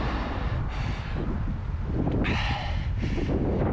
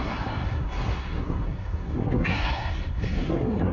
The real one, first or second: first